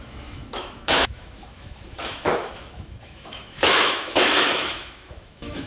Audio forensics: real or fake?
fake